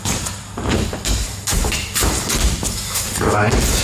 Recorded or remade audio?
recorded